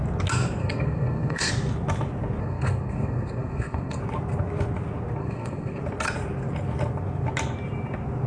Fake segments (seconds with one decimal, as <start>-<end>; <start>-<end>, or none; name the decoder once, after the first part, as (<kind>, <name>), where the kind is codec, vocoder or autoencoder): 0.6-1.5 (codec, SNAC); 2.4-4.0; 5.2-5.8